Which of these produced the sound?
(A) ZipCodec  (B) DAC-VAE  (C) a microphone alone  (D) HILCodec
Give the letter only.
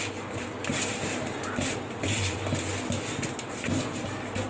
C